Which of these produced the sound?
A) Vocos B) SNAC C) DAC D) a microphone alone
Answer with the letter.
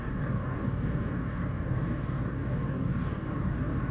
C